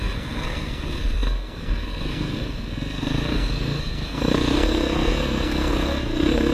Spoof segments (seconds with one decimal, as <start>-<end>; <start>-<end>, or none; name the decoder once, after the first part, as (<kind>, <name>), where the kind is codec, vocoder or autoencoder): 0.0-6.5 (codec, SNAC)